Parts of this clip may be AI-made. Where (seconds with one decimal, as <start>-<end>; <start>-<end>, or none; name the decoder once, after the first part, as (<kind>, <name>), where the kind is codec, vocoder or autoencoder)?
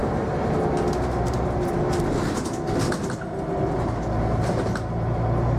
none